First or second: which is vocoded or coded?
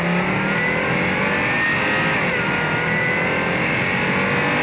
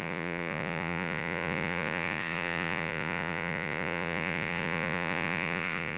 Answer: second